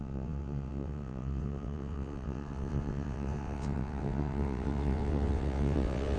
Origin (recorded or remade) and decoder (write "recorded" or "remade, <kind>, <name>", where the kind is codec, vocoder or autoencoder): remade, vocoder, WaveNeXt